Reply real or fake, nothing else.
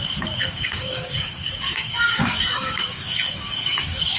fake